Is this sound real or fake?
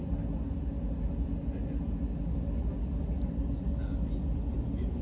real